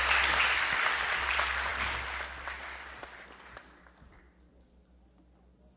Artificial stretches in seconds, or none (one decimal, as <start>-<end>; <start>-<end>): none